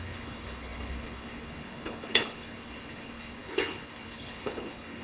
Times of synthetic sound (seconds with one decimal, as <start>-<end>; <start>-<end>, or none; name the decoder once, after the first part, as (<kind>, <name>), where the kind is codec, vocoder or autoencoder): 0.0-5.0 (codec, HILCodec)